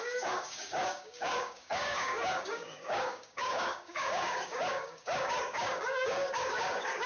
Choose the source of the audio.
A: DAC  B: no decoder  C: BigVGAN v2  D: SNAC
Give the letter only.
A